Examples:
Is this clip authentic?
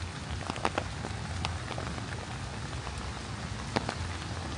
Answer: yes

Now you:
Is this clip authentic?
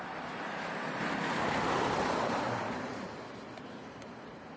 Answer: no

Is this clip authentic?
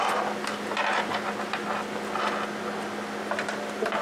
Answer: yes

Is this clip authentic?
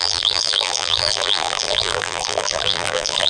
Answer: no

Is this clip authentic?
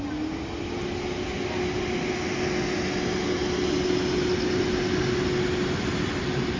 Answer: yes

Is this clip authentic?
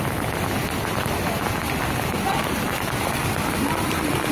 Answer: yes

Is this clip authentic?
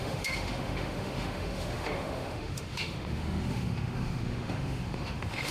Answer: no